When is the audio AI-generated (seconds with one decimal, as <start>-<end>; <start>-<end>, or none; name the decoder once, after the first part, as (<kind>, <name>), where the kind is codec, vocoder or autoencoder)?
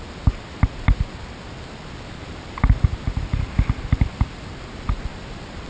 none